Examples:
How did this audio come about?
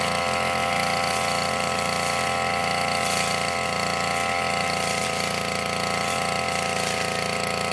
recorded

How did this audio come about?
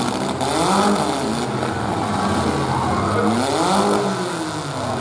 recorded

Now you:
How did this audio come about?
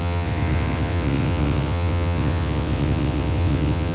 remade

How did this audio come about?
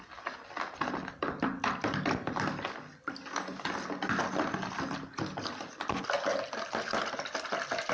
recorded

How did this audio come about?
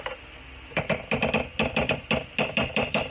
recorded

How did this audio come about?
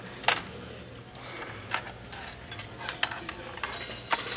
recorded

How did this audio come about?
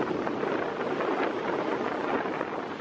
recorded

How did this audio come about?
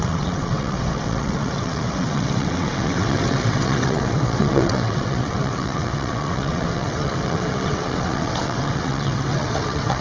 remade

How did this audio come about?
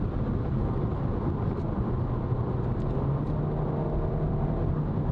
recorded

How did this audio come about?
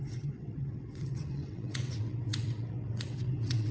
remade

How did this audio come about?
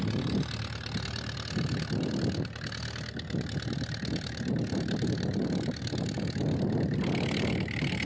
recorded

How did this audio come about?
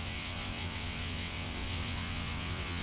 remade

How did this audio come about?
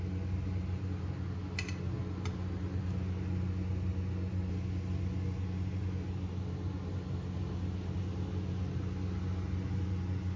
recorded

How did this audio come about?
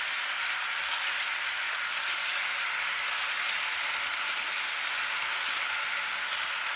recorded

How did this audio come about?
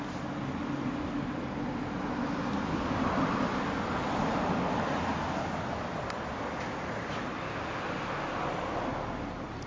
recorded